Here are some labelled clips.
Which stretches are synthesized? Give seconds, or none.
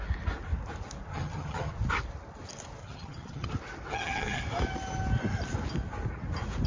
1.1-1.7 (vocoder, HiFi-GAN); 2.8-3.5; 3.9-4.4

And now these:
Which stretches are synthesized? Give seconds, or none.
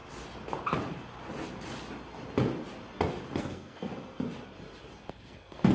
3.4-3.9 (codec, SNAC); 5.1-5.7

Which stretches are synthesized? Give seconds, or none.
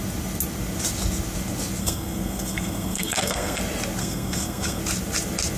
1.8-3.6 (codec, SNAC); 4.0-4.8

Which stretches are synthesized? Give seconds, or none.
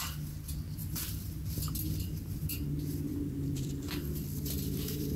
0.8-1.7 (vocoder, BigVGAN v2); 2.4-5.2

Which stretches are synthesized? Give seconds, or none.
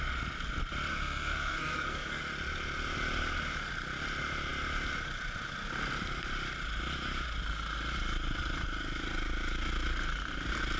0.9-2.2 (codec, SNAC)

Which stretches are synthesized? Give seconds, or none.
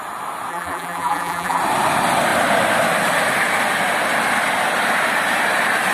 0.5-1.6 (vocoder, BigVGAN v2)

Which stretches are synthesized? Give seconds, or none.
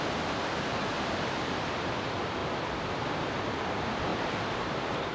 0.7-1.9 (vocoder, BigVGAN v2); 4.1-5.1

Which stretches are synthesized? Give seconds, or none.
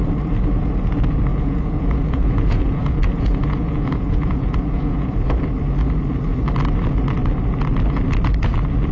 1.3-5.4 (vocoder, Vocos)